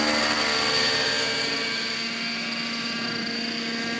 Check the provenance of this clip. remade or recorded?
recorded